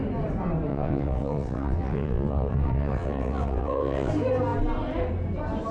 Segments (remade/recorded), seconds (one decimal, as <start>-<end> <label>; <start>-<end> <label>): 0.0-0.7 recorded; 0.7-4.1 remade; 4.1-5.7 recorded